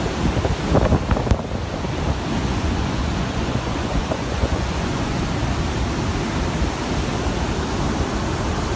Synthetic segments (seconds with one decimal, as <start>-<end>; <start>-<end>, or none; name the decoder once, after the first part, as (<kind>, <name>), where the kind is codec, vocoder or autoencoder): 2.4-5.2 (vocoder, Vocos)